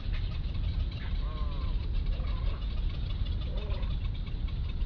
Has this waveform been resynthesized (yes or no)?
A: no